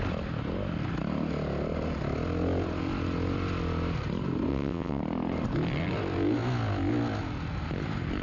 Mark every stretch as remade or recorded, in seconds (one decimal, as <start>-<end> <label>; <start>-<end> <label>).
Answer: 0.0-4.5 recorded; 4.5-5.0 remade; 5.0-8.2 recorded